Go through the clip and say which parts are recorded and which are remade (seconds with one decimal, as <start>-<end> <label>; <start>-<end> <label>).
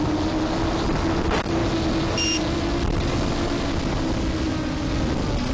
0.0-5.5 recorded